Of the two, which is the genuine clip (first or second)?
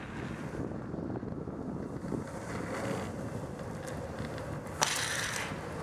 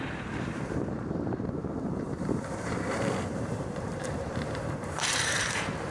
first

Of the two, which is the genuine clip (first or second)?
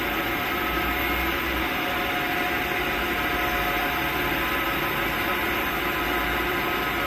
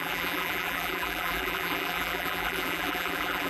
first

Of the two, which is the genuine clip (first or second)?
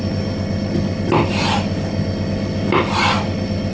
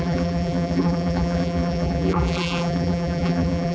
first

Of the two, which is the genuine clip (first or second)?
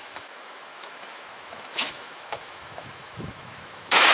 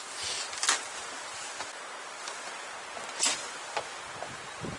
second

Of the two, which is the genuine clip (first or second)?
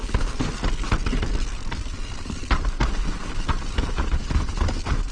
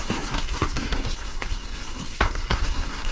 first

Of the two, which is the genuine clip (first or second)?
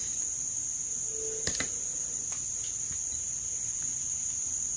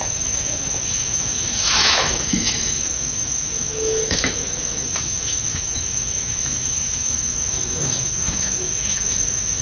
first